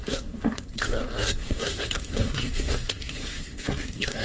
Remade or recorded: remade